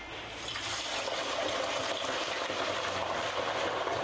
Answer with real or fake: real